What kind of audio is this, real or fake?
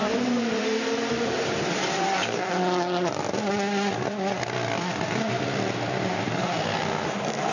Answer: real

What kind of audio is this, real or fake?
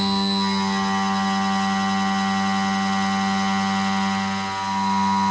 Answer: real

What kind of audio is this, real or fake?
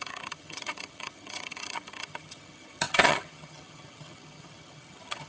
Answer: fake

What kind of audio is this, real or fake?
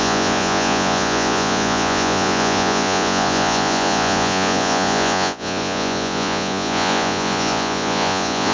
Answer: fake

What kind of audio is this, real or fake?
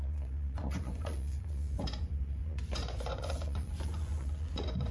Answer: fake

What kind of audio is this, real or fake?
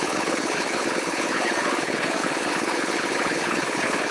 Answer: fake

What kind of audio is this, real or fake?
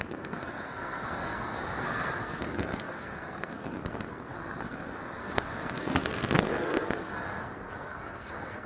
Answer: fake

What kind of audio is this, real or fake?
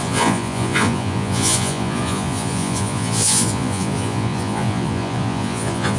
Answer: fake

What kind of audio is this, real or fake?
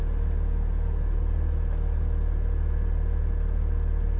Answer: real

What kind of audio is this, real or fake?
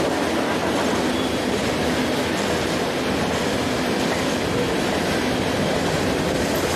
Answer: real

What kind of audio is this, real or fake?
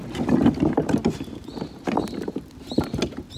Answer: real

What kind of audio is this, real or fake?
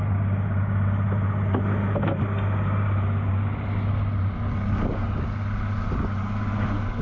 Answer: real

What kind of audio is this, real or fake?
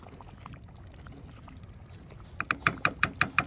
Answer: real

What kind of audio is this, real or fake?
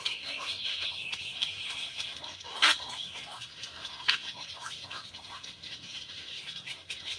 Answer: fake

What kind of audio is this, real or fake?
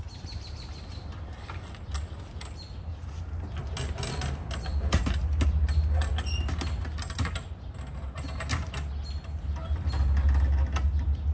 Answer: real